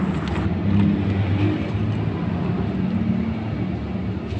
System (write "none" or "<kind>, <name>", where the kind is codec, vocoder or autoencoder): none